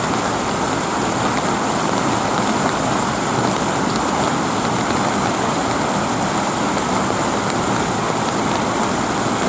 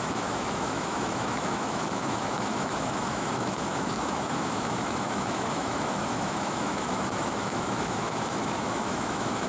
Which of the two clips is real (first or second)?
first